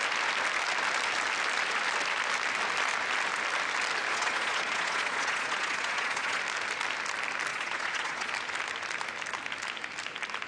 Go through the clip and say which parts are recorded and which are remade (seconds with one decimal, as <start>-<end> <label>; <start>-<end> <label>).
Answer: 0.0-4.1 recorded; 4.1-6.4 remade; 6.4-7.5 recorded; 7.5-8.3 remade; 8.3-10.5 recorded